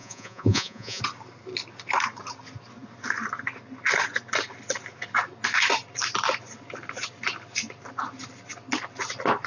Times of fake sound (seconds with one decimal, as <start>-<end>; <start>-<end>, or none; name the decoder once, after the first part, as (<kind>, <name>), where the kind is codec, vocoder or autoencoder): 0.0-1.0 (vocoder, Vocos)